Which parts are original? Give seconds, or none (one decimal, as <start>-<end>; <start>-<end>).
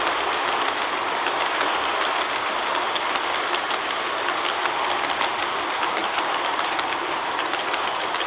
0.0-6.0